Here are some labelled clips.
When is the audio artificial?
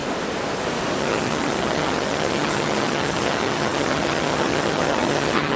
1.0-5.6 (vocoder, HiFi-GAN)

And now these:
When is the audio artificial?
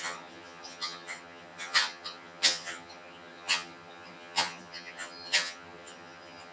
0.0-6.5 (vocoder, HiFi-GAN)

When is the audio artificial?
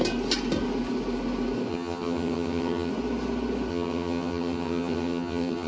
1.7-2.9 (vocoder, HiFi-GAN); 3.7-5.7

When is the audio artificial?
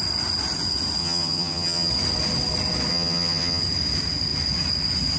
1.0-1.9 (vocoder, HiFi-GAN); 2.9-3.6